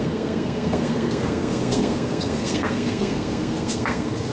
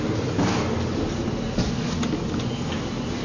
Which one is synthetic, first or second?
first